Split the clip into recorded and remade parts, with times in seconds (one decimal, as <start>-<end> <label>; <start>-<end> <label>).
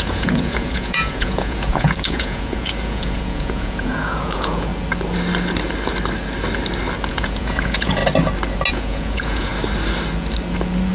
0.0-4.7 remade; 4.7-7.1 recorded; 7.1-8.0 remade; 8.0-8.7 recorded; 8.7-9.5 remade; 9.5-10.9 recorded